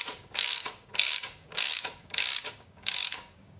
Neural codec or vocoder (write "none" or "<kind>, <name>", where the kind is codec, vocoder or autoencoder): codec, DAC